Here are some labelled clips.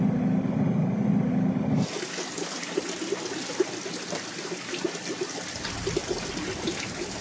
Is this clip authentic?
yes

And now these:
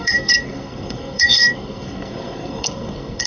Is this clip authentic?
no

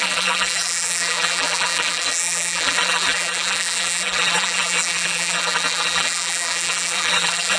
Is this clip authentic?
no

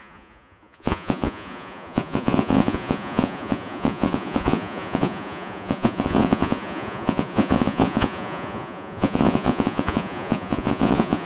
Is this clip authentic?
no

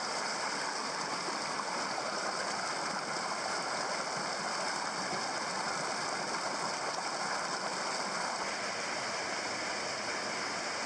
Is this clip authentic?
yes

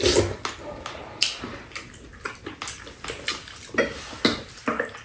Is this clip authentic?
yes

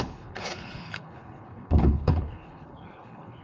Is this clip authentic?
no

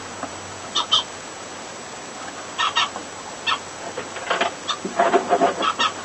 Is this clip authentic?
yes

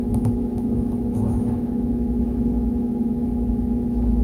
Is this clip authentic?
no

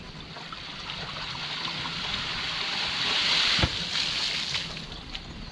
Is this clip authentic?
yes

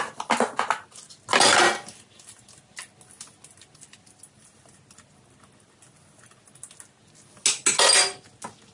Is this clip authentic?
yes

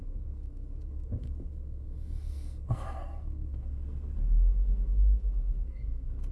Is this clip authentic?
no